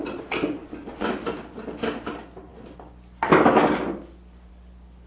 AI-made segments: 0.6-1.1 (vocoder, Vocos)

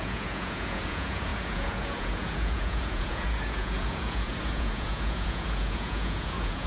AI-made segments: 0.0-6.7 (vocoder, Vocos)

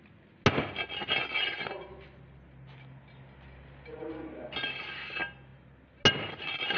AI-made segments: none

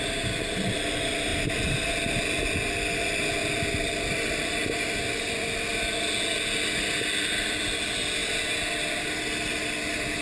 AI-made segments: none

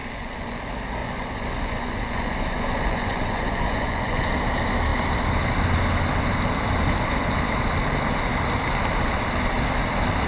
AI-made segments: 0.0-0.6 (vocoder, Vocos); 1.0-4.3